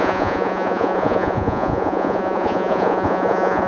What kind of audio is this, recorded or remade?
remade